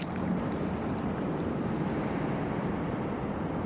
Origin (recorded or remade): recorded